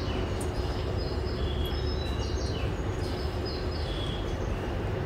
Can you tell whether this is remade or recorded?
recorded